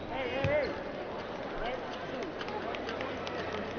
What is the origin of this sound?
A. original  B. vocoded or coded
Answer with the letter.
A